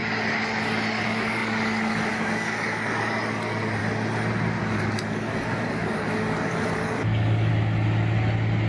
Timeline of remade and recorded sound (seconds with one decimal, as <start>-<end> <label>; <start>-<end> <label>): 0.0-3.8 remade; 3.8-4.6 recorded; 4.6-7.5 remade; 7.5-8.7 recorded